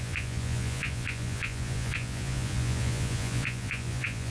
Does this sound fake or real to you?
fake